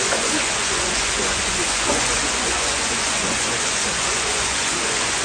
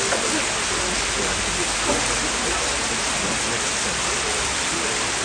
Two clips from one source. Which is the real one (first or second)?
second